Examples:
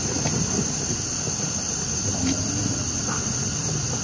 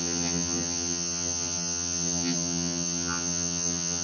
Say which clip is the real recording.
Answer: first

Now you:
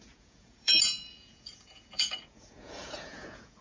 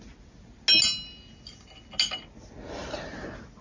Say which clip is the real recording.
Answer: second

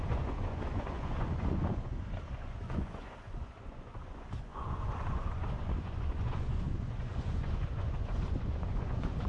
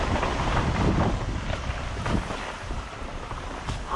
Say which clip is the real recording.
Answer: second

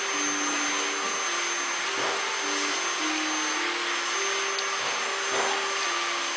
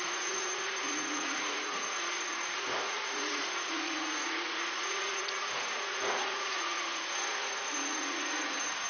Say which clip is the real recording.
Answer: first